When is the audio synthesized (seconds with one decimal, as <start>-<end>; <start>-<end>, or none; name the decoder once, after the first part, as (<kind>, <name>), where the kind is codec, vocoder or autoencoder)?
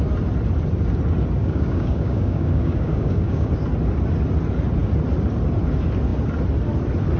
1.4-3.5 (codec, DAC)